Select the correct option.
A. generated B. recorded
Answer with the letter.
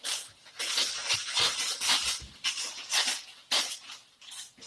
B